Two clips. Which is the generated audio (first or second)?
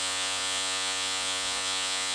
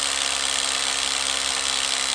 first